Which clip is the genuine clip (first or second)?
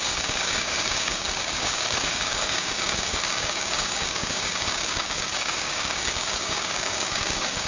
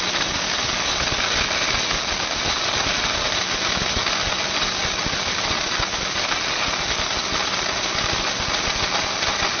second